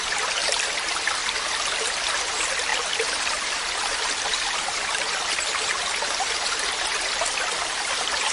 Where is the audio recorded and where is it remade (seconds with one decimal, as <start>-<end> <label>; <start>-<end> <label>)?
0.0-1.2 remade; 1.2-2.3 recorded; 2.3-8.3 remade